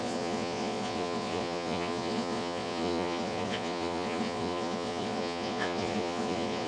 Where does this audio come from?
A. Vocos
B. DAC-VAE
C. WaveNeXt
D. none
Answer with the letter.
A